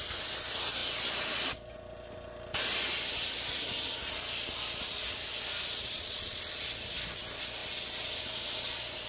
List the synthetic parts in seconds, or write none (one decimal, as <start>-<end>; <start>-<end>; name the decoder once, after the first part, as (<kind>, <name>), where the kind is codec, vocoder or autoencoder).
5.9-6.6 (vocoder, Vocos)